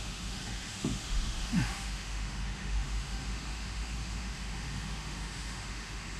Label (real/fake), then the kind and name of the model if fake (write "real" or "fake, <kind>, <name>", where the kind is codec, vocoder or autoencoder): fake, autoencoder, DAC-VAE